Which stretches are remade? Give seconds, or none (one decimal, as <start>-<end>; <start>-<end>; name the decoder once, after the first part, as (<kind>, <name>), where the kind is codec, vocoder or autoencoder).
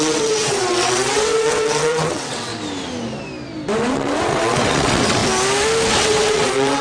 0.0-2.5 (vocoder, WaveNeXt); 3.9-5.2; 5.9-6.8